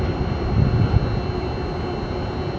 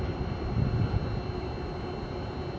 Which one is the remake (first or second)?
second